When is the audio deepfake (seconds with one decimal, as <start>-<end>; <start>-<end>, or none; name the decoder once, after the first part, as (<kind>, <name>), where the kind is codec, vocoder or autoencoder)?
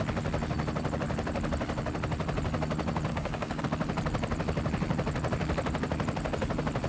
3.1-3.6 (codec, DAC)